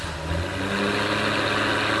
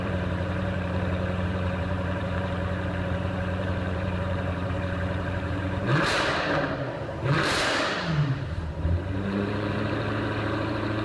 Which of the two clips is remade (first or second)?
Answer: second